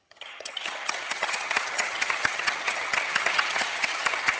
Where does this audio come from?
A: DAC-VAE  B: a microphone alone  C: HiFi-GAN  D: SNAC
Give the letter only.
C